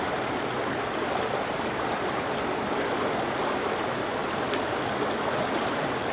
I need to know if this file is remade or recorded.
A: recorded